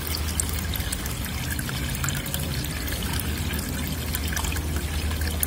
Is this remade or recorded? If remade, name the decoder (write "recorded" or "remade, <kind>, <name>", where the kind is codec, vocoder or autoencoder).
recorded